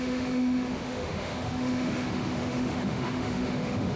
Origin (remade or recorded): remade